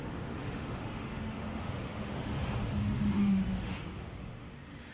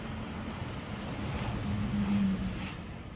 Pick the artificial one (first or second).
first